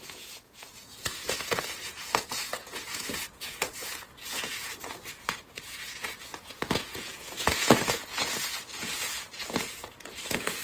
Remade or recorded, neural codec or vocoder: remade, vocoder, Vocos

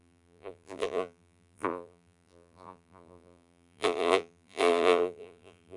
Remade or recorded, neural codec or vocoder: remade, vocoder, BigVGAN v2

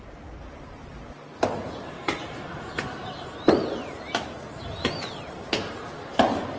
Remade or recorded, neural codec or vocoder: remade, vocoder, BigVGAN v2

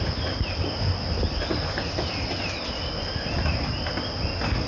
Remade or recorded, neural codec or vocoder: recorded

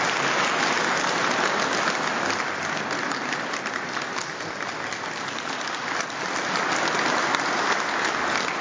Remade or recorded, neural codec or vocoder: recorded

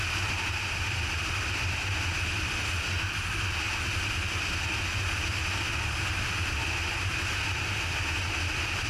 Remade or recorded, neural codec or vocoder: recorded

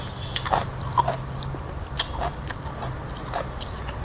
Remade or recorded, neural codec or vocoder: recorded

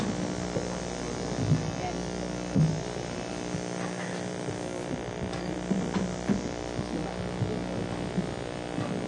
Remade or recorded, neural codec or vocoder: recorded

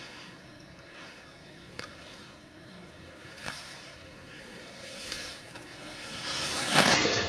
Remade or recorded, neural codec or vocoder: remade, codec, SNAC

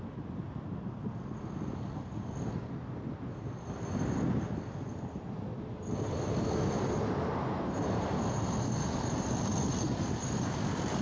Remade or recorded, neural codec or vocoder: recorded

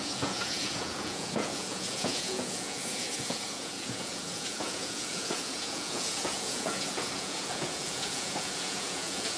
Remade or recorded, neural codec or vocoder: remade, vocoder, Vocos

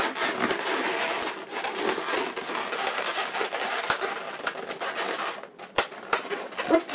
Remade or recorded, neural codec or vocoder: recorded